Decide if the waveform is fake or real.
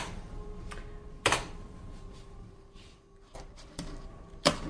fake